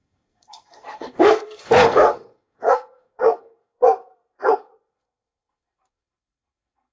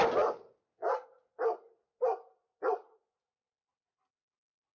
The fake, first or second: first